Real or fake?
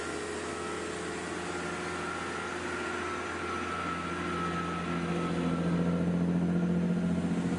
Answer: real